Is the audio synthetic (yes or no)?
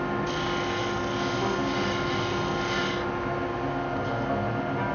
no